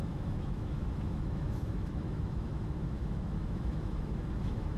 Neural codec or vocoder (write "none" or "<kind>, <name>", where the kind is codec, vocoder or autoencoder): autoencoder, DAC-VAE